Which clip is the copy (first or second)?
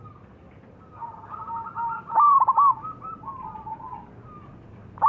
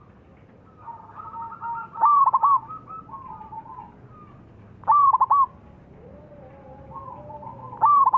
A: first